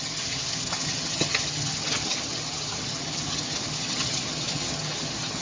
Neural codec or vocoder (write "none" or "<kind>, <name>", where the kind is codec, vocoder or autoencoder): vocoder, HiFi-GAN